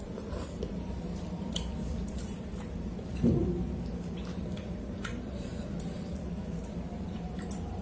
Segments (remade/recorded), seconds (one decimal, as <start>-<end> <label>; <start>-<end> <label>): 0.0-5.5 remade; 5.5-6.2 recorded; 6.2-7.8 remade